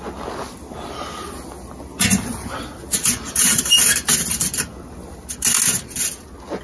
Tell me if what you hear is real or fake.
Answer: real